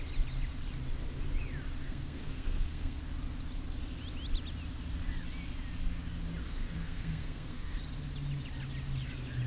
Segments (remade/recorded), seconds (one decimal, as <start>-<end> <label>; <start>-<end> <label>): 0.0-1.8 recorded; 1.8-3.0 remade; 3.0-6.4 recorded; 6.4-7.8 remade; 7.8-9.5 recorded